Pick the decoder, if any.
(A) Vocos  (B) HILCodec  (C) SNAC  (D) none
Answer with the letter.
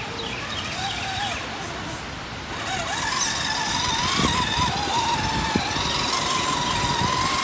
D